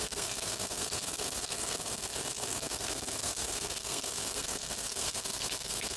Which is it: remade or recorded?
remade